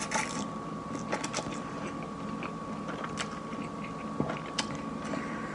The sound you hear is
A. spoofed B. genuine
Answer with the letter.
B